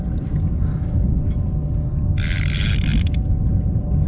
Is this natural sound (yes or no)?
yes